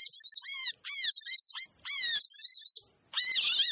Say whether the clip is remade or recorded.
recorded